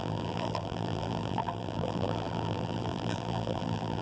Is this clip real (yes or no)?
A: no